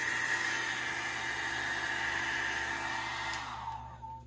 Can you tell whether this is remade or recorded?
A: recorded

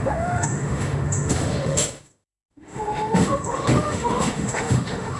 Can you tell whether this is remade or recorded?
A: remade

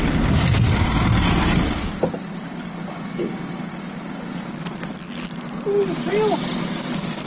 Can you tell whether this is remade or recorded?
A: recorded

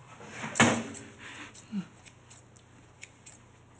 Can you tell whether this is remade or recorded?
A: recorded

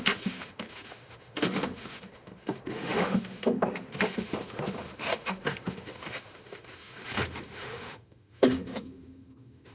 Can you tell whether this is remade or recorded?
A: remade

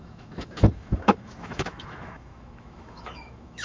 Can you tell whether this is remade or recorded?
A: remade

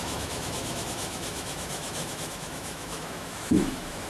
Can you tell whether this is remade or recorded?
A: remade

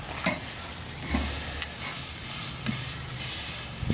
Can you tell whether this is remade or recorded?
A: recorded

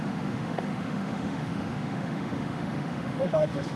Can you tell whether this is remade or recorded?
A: remade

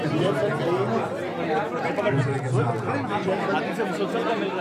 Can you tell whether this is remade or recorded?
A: recorded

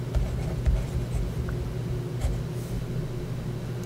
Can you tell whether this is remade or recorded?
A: recorded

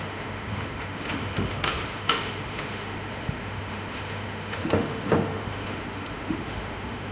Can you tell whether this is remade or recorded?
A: remade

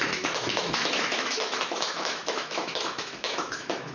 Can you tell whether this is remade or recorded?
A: remade